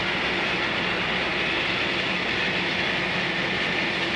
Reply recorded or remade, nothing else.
recorded